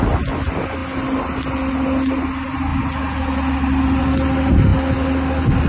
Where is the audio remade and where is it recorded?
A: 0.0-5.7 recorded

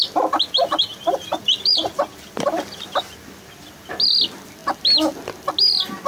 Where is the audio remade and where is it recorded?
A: 0.0-0.9 recorded; 0.9-3.0 remade; 3.0-6.1 recorded

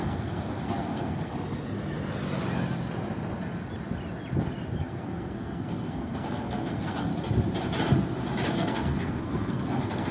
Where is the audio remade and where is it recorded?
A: 0.0-1.3 remade; 1.3-4.8 recorded; 4.8-7.1 remade; 7.1-8.5 recorded; 8.5-10.1 remade